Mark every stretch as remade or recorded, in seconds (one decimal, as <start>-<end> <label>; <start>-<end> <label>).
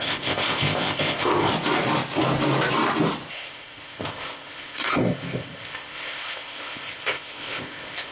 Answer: 0.0-1.5 remade; 1.5-3.3 recorded; 3.3-8.1 remade